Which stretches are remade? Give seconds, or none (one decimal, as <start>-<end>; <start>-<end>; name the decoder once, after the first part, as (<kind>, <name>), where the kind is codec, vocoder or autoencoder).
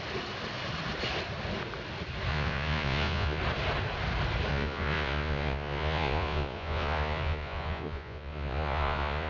2.3-3.4 (vocoder, Vocos); 4.5-9.3